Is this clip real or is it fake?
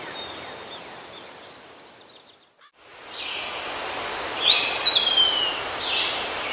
real